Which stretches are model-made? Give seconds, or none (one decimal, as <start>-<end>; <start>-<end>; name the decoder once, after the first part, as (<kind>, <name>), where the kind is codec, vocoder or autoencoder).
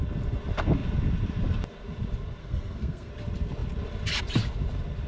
2.4-3.1 (codec, SNAC)